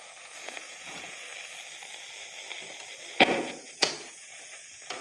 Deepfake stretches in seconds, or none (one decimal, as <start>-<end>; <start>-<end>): 0.0-1.3; 3.1-5.0